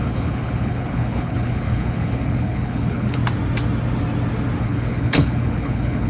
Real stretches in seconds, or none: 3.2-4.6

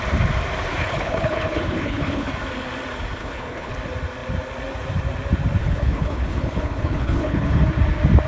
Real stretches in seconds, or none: 0.0-0.8; 2.3-3.2; 3.7-5.6; 7.6-8.3

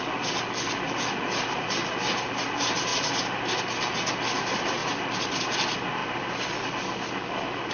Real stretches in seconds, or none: 0.0-7.7

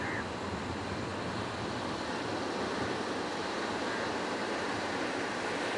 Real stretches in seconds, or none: 0.0-5.8

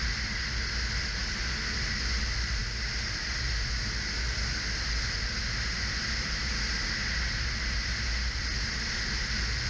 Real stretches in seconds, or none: 0.0-9.7